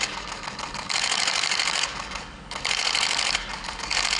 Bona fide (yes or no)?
no